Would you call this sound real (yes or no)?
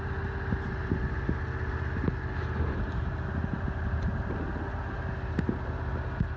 yes